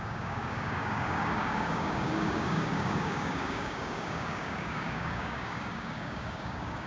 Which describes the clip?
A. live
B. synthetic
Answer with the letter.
B